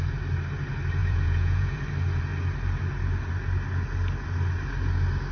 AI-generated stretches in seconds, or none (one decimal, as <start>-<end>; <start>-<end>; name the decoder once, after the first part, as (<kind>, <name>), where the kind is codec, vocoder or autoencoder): 1.0-1.8 (vocoder, Vocos)